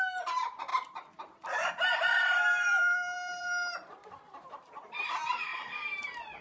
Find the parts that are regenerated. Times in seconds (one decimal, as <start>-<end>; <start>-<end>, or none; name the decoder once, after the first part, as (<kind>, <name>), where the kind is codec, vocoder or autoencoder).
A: 0.7-4.5 (vocoder, BigVGAN v2)